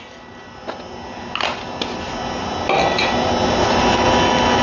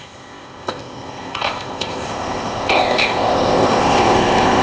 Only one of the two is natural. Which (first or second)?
first